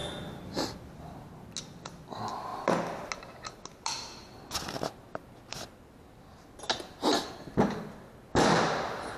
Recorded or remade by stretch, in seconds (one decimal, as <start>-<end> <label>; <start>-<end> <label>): 0.0-9.2 recorded